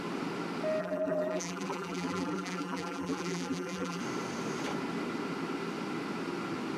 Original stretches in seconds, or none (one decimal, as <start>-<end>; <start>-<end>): 0.0-0.8; 4.0-6.8